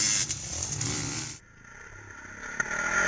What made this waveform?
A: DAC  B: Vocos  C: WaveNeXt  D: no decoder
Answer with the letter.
D